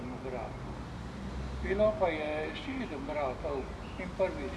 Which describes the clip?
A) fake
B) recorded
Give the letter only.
B